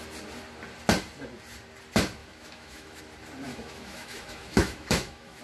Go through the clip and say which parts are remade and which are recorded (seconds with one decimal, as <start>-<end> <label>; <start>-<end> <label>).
0.0-2.2 recorded; 2.2-3.0 remade; 3.0-3.5 recorded; 3.5-5.4 remade